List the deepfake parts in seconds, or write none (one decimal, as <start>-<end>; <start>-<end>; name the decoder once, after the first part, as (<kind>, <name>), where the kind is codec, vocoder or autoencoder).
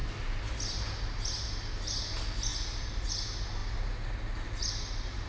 none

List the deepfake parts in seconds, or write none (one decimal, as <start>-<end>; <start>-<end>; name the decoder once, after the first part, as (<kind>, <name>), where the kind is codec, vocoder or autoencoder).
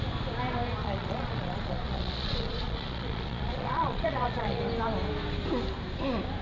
0.8-4.6 (vocoder, Vocos)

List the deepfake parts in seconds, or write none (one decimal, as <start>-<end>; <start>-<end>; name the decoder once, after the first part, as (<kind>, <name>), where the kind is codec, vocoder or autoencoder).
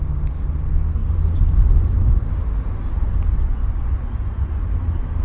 3.3-4.6 (vocoder, Vocos)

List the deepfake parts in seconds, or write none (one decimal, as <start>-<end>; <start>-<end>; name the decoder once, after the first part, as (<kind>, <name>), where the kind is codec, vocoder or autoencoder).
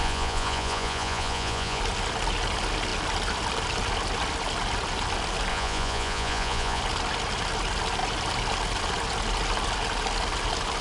0.0-1.8 (vocoder, Vocos); 5.5-6.8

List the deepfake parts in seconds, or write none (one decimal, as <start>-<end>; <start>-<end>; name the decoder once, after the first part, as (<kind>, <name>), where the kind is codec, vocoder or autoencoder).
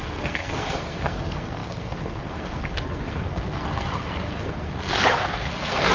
0.0-5.9 (codec, SNAC)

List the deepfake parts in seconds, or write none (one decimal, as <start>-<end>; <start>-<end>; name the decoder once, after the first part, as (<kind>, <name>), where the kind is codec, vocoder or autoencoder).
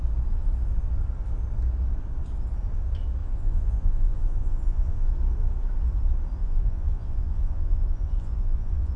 3.2-5.1 (vocoder, Vocos); 6.4-9.0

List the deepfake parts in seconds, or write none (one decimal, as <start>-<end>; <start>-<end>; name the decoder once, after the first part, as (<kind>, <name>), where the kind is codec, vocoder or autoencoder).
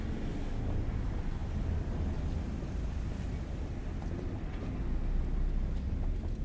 none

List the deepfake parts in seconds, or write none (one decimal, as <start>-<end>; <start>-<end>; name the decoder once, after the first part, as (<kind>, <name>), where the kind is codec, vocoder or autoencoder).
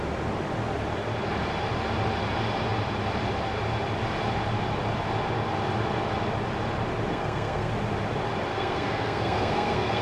7.1-7.7 (codec, SNAC); 8.5-10.0